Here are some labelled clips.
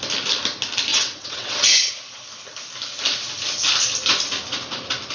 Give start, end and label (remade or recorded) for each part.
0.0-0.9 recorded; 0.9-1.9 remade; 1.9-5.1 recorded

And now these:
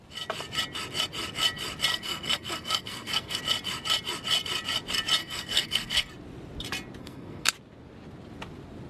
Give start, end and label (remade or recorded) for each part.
0.0-1.9 recorded; 1.9-3.4 remade; 3.4-5.2 recorded; 5.2-6.1 remade; 6.1-7.0 recorded; 7.0-7.5 remade; 7.5-8.9 recorded

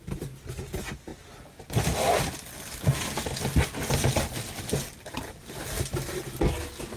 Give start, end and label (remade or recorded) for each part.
0.0-7.0 recorded

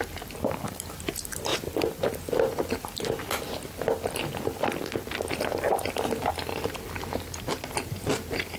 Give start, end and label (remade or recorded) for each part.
0.0-1.5 remade; 1.5-6.3 recorded; 6.3-8.6 remade

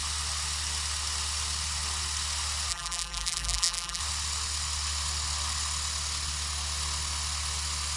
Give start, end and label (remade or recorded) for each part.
0.0-2.7 recorded; 2.7-4.0 remade; 4.0-8.0 recorded

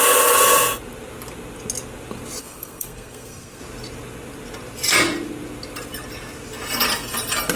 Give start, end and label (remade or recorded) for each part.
0.0-2.4 recorded; 2.4-3.6 remade; 3.6-7.6 recorded

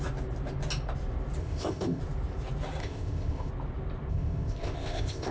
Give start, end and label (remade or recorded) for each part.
0.0-1.4 recorded; 1.4-2.0 remade; 2.0-2.8 recorded; 2.8-3.5 remade; 3.5-4.1 recorded; 4.1-5.3 remade

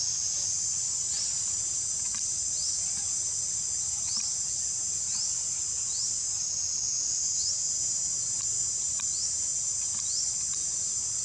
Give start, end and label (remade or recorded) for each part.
0.0-11.2 recorded